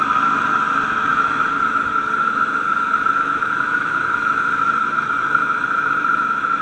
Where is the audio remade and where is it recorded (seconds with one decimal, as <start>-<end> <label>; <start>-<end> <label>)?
0.0-6.6 remade